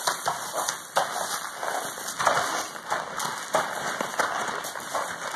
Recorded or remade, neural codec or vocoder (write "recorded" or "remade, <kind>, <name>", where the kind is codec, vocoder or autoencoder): recorded